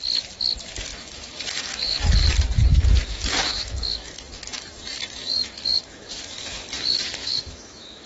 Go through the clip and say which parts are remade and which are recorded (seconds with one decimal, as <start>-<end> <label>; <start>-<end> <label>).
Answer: 0.0-0.9 recorded; 0.9-2.0 remade; 2.0-2.7 recorded; 2.7-6.7 remade; 6.7-7.2 recorded; 7.2-8.1 remade